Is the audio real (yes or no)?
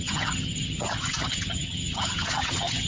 no